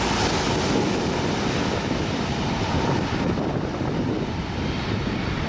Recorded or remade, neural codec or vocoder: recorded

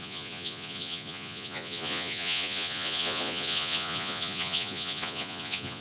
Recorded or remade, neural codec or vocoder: remade, vocoder, Vocos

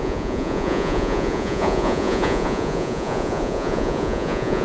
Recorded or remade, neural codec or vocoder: remade, vocoder, Vocos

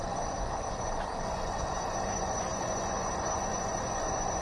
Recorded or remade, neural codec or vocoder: remade, vocoder, Vocos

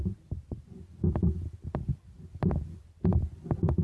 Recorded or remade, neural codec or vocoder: recorded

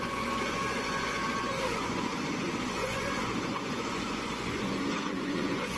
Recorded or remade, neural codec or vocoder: remade, vocoder, Vocos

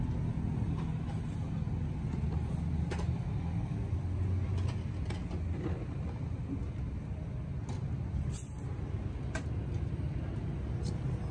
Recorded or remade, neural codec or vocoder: recorded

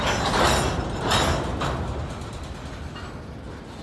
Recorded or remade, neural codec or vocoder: recorded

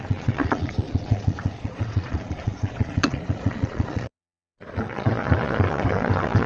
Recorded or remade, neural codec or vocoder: remade, vocoder, Vocos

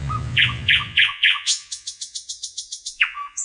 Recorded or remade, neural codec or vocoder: remade, vocoder, Vocos